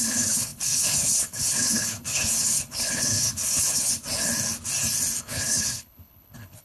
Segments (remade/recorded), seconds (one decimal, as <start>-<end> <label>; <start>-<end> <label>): 0.0-3.9 remade; 3.9-5.2 recorded; 5.2-6.6 remade